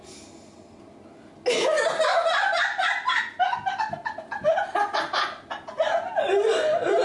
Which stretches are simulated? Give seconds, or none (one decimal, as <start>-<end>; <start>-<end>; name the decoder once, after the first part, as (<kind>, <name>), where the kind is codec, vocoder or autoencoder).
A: none

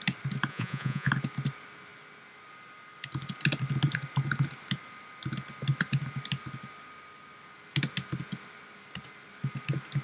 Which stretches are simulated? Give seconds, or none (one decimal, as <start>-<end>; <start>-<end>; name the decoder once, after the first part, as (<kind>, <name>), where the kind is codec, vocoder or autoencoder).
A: 0.5-1.1 (vocoder, Vocos)

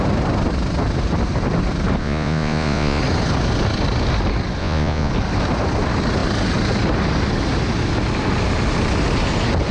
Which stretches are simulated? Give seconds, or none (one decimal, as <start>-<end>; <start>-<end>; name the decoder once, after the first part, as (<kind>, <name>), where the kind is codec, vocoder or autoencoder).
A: 2.0-3.0 (vocoder, Vocos); 4.6-5.1

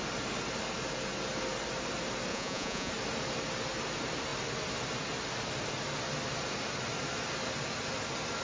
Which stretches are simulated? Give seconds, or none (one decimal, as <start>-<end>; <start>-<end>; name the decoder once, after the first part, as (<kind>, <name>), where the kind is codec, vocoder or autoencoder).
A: 2.3-2.9 (vocoder, Vocos)